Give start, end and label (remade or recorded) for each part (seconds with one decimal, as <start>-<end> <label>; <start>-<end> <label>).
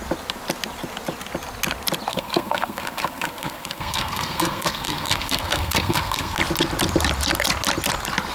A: 0.0-2.1 recorded; 2.1-6.4 remade; 6.4-8.3 recorded